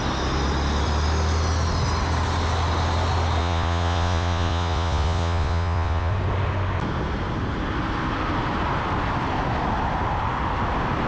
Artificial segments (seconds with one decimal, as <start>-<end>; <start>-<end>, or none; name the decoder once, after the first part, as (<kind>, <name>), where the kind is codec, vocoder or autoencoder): 3.4-6.1 (vocoder, Vocos)